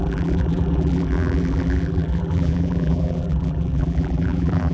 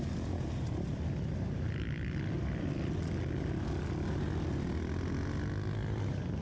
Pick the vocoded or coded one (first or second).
first